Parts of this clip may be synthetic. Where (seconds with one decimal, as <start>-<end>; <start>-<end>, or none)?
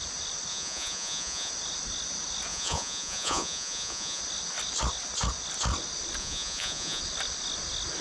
0.5-1.5; 2.5-4.2; 6.2-7.0